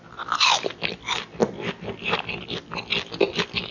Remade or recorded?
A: recorded